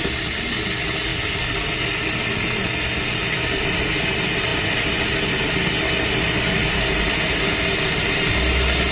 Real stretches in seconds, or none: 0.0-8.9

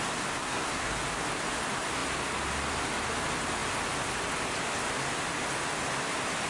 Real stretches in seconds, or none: 0.0-0.4; 0.9-6.5

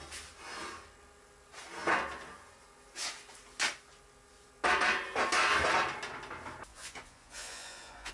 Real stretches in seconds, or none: 0.0-6.7

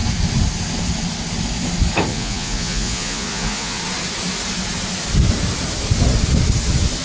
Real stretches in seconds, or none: 0.0-2.1; 3.8-7.0

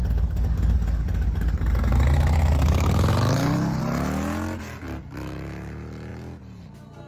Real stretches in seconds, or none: 3.8-7.1

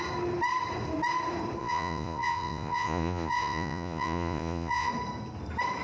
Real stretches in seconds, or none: 0.0-1.6; 4.9-5.8

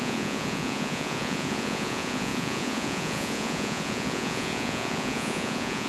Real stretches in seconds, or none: none